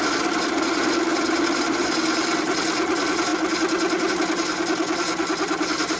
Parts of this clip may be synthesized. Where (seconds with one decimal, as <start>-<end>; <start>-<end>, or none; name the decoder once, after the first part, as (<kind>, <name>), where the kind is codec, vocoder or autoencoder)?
1.1-1.9 (vocoder, BigVGAN v2)